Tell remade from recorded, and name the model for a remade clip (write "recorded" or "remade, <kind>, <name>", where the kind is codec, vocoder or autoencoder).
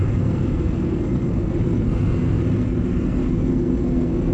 remade, codec, SNAC